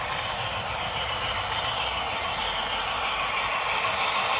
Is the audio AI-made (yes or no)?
yes